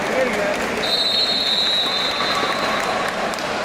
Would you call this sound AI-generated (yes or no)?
no